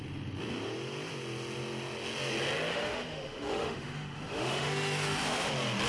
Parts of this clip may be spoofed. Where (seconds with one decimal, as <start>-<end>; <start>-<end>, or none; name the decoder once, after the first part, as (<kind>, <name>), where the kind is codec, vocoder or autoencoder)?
2.7-5.5 (autoencoder, DAC-VAE)

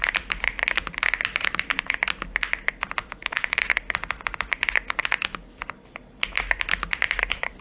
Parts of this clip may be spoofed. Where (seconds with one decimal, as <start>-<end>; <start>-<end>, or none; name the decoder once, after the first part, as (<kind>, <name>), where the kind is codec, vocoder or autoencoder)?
3.0-3.6 (autoencoder, DAC-VAE)

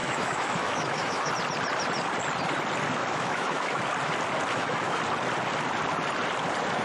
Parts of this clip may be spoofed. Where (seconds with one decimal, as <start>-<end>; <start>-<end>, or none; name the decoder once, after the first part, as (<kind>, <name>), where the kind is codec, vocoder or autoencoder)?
0.0-1.3 (autoencoder, DAC-VAE); 3.0-3.8; 4.5-5.0

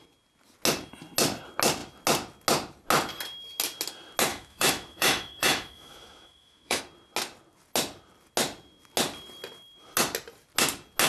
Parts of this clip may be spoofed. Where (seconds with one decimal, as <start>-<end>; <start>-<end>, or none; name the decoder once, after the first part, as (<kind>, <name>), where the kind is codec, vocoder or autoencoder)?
4.3-6.8 (autoencoder, DAC-VAE)

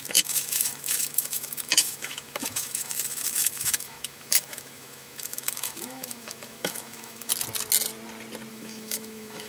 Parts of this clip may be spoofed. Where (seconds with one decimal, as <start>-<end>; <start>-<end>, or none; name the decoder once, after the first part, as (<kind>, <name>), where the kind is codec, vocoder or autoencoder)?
0.0-7.3 (autoencoder, DAC-VAE); 8.5-9.5